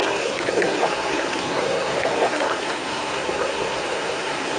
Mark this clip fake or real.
fake